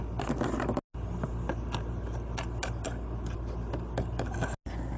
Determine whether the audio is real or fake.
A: real